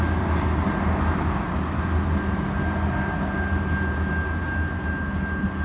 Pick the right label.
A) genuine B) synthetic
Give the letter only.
A